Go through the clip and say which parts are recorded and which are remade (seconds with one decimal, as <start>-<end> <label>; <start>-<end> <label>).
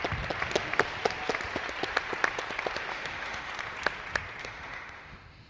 0.0-2.9 recorded; 2.9-3.5 remade; 3.5-4.4 recorded; 4.4-5.5 remade